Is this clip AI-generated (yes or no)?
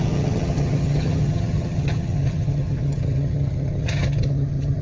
yes